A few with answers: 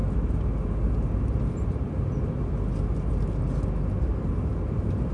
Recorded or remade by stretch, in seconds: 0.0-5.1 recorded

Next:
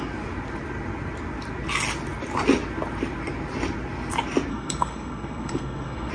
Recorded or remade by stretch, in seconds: 0.0-4.5 recorded; 4.5-6.1 remade

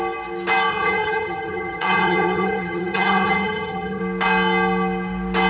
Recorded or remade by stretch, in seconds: 0.0-0.7 recorded; 0.7-4.0 remade; 4.0-5.5 recorded

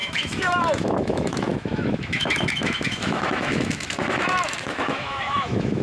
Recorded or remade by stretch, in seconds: 0.0-5.8 remade

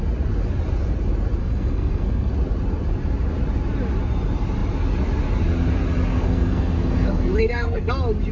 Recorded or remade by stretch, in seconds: 0.0-1.4 recorded; 1.4-2.3 remade; 2.3-6.1 recorded; 6.1-7.9 remade; 7.9-8.3 recorded

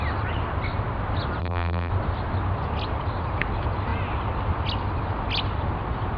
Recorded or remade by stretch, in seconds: 0.0-1.4 recorded; 1.4-1.9 remade; 1.9-6.2 recorded

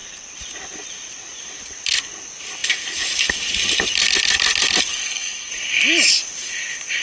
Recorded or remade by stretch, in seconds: 0.0-4.9 recorded; 4.9-5.5 remade; 5.5-7.0 recorded